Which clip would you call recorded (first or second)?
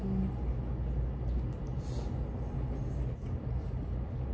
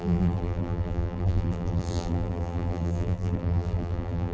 first